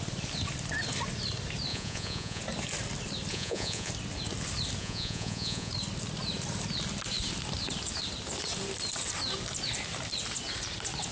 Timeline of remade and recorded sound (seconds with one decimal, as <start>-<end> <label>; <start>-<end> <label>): 0.0-1.7 recorded; 1.7-2.4 remade; 2.4-3.3 recorded; 3.3-3.9 remade; 3.9-4.8 recorded; 4.8-5.7 remade; 5.7-11.1 recorded